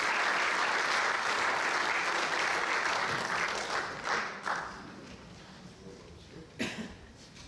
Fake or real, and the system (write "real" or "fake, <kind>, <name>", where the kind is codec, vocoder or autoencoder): real